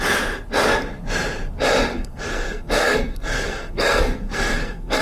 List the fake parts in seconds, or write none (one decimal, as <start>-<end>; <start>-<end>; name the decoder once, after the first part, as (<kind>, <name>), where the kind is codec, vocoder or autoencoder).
1.9-5.0 (codec, SNAC)